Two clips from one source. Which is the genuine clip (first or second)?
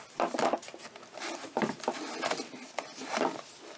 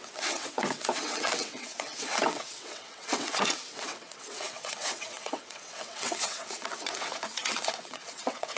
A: first